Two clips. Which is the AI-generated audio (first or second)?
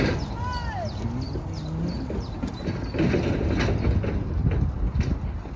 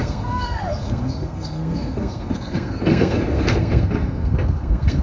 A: second